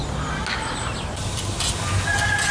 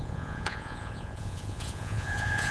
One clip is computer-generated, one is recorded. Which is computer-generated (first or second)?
second